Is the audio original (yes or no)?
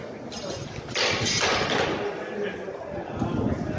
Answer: yes